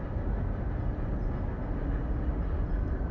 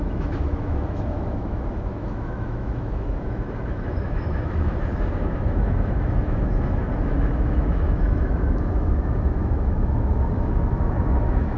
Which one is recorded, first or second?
first